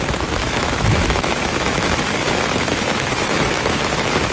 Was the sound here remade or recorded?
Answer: remade